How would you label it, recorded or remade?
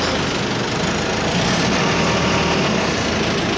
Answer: recorded